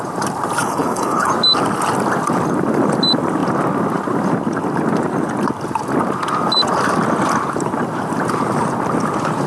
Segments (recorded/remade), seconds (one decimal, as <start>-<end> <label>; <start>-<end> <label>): 0.0-0.6 recorded; 0.6-1.3 remade; 1.3-9.5 recorded